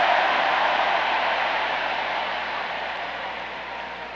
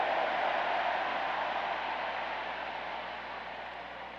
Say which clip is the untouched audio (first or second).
second